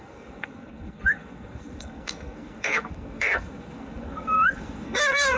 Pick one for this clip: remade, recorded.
remade